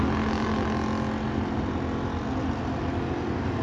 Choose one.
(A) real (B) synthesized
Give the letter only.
A